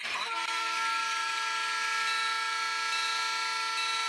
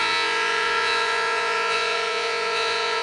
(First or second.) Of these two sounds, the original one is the first